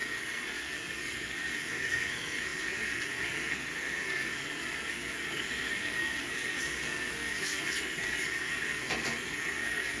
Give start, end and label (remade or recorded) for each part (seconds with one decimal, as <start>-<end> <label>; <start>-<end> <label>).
0.0-10.0 remade